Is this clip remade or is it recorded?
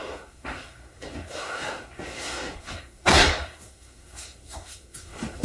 remade